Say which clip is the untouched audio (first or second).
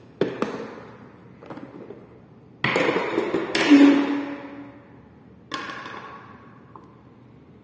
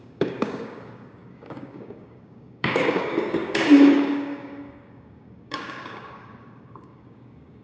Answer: first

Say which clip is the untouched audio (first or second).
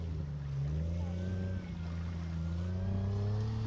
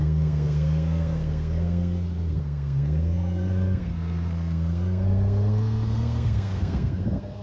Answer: first